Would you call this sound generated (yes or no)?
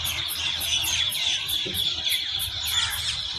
no